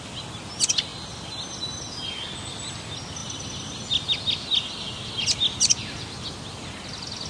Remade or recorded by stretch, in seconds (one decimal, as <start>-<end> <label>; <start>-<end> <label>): 0.0-7.3 recorded